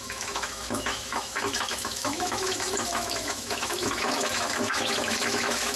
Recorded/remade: remade